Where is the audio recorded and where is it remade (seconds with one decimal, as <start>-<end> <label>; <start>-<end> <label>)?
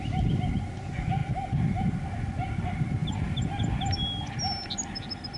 0.0-1.2 recorded; 1.2-1.9 remade; 1.9-3.0 recorded; 3.0-3.6 remade; 3.6-5.4 recorded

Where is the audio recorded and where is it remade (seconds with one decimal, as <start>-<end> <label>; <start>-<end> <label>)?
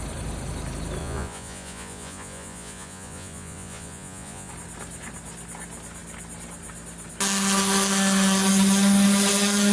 0.0-1.0 recorded; 1.0-4.5 remade; 4.5-9.7 recorded